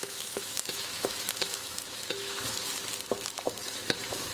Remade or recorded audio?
remade